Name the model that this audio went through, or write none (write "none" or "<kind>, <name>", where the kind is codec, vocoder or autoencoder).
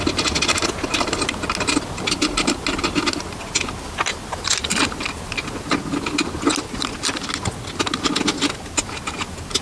none